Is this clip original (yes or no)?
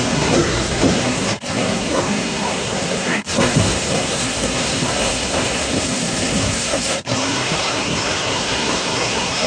no